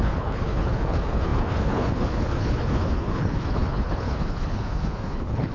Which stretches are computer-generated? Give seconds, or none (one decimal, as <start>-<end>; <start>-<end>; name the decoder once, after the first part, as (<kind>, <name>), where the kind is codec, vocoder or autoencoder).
0.0-5.5 (codec, HILCodec)